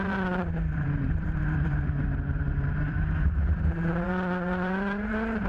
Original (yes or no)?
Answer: no